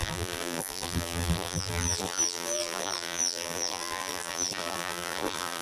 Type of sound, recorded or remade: remade